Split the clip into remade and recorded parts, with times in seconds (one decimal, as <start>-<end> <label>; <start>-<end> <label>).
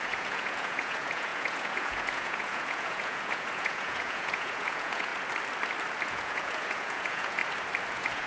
0.0-5.1 remade; 5.1-6.0 recorded; 6.0-7.4 remade; 7.4-7.9 recorded; 7.9-8.3 remade